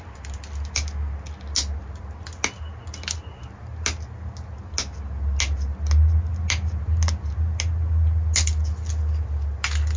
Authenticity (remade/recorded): recorded